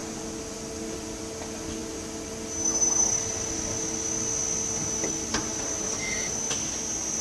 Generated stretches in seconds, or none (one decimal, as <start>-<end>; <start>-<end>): none